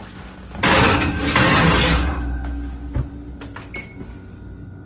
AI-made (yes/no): no